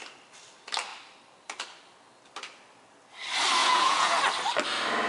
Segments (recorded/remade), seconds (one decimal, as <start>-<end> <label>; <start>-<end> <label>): 0.0-3.6 recorded; 3.6-4.2 remade; 4.2-5.1 recorded